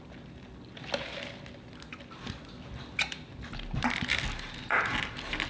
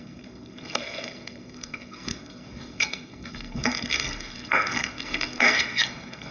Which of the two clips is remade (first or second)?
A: second